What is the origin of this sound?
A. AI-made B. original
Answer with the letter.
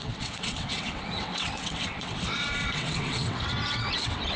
A